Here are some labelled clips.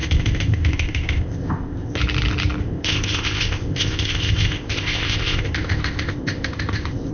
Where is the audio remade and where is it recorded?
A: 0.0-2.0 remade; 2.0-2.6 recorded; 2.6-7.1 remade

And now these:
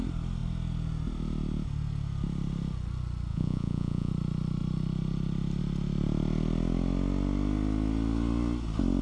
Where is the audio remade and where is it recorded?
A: 0.0-3.3 recorded; 3.3-4.1 remade; 4.1-9.0 recorded

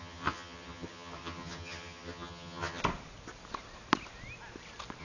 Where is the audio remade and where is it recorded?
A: 0.0-2.8 remade; 2.8-5.0 recorded

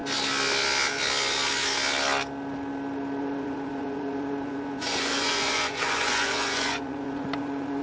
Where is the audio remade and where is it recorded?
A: 0.0-3.2 recorded; 3.2-7.8 remade